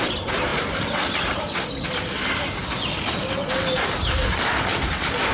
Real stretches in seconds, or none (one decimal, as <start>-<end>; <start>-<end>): 0.5-1.2